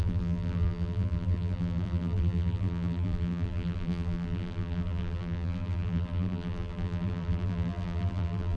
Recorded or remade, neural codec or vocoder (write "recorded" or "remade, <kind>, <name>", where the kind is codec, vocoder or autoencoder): remade, vocoder, BigVGAN v2